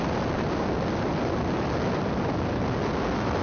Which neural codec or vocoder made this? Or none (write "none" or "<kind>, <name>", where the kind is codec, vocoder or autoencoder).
none